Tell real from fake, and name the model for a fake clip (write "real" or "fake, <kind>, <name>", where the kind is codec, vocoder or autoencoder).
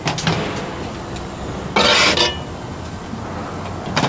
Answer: real